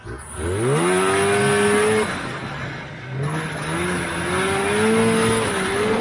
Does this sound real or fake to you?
real